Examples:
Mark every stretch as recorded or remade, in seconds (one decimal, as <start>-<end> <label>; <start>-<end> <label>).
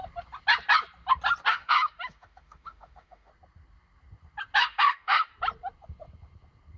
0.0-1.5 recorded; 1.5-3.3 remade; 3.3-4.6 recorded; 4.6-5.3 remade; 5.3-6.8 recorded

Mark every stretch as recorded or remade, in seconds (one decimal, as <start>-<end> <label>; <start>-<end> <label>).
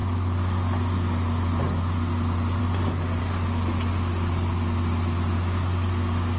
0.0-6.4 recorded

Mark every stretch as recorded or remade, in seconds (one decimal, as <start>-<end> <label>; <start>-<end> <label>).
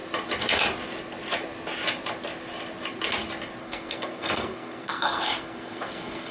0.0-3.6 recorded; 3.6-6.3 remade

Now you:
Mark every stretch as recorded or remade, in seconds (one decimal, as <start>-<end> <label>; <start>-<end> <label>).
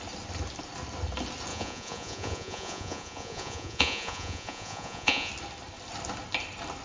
0.0-1.5 recorded; 1.5-5.3 remade; 5.3-6.8 recorded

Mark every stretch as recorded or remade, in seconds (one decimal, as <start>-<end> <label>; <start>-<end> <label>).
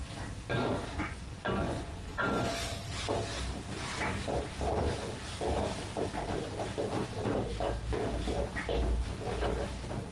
0.0-0.9 recorded; 0.9-2.5 remade; 2.5-10.1 recorded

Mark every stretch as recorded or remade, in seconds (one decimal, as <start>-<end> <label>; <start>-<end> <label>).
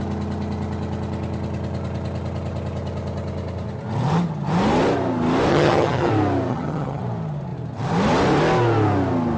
0.0-5.5 recorded; 5.5-6.1 remade; 6.1-6.5 recorded; 6.5-7.0 remade; 7.0-9.4 recorded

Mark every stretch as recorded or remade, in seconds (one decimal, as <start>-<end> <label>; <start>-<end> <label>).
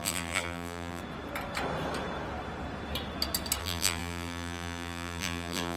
0.0-1.0 remade; 1.0-3.6 recorded; 3.6-5.8 remade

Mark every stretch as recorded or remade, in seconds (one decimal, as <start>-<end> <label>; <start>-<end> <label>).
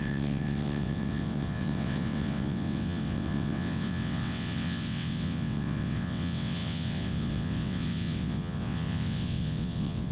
0.0-10.1 remade